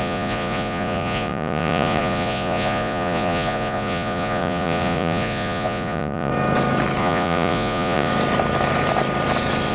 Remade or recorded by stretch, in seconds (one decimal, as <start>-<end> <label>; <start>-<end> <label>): 0.0-6.3 remade; 6.3-7.0 recorded; 7.0-8.1 remade; 8.1-9.7 recorded